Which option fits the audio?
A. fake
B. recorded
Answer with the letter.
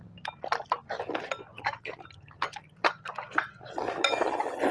B